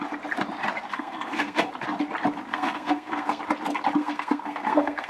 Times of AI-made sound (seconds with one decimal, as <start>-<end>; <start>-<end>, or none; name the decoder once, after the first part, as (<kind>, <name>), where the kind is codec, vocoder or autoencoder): 0.9-1.7 (codec, SNAC); 2.5-3.4; 4.0-5.1